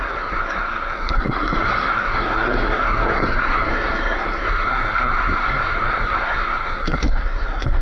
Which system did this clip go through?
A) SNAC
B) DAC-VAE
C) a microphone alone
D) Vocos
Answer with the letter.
A